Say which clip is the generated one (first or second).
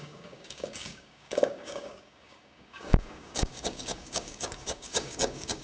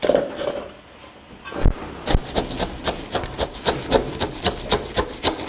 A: first